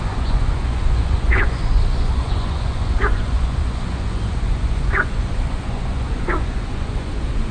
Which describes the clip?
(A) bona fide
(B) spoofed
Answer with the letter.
B